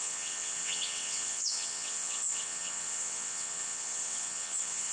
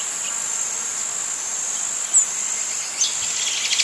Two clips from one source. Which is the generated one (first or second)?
first